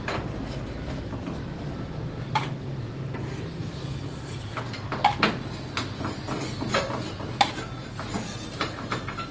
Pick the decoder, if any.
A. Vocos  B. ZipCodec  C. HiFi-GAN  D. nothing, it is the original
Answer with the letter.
D